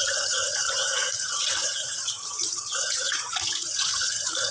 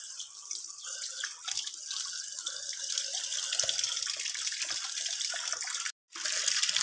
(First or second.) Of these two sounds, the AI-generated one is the first